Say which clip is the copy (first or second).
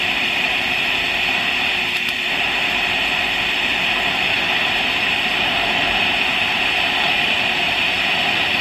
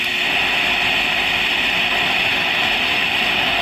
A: first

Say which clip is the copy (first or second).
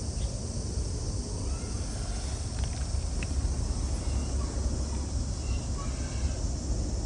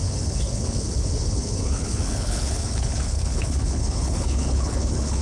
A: second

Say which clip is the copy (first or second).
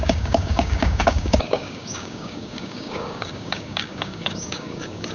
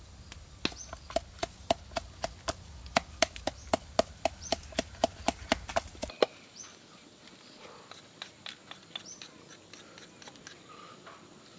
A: first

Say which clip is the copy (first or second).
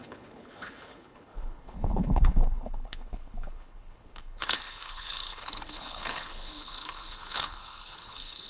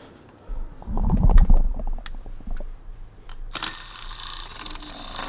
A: first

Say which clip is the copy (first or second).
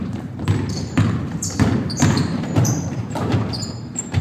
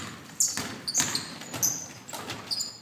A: first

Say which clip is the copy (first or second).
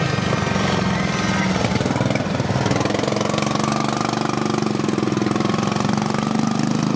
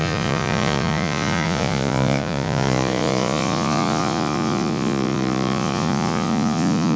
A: second